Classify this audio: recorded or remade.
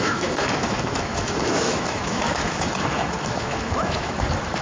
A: remade